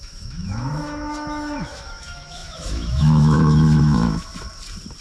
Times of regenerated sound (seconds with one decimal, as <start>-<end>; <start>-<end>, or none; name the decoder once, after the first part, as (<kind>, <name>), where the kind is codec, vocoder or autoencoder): 0.0-4.3 (autoencoder, DAC-VAE)